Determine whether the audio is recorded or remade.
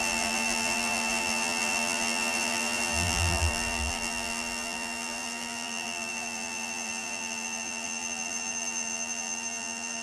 remade